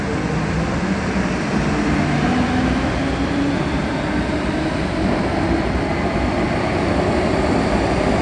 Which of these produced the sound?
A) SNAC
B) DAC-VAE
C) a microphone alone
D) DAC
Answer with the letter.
C